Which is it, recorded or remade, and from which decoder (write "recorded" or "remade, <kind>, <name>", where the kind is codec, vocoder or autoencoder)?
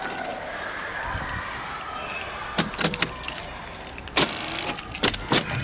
recorded